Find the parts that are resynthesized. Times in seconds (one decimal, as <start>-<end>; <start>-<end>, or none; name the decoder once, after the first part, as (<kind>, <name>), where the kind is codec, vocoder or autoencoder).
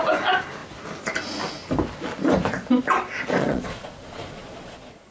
3.4-5.1 (vocoder, Vocos)